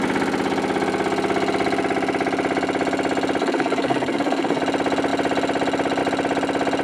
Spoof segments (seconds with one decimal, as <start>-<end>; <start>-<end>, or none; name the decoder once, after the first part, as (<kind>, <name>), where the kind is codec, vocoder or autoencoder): 3.4-4.6 (codec, SNAC)